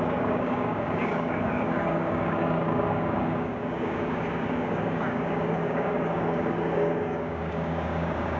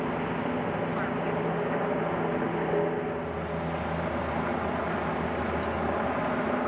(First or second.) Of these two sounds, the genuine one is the second